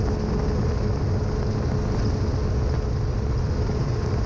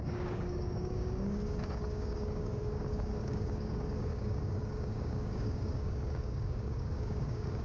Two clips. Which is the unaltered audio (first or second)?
first